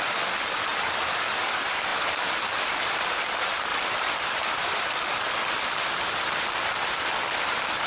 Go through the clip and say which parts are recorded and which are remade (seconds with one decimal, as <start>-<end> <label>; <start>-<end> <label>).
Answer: 0.0-0.7 recorded; 0.7-1.4 remade; 1.4-1.9 recorded; 1.9-3.1 remade; 3.1-3.7 recorded; 3.7-5.9 remade; 5.9-7.9 recorded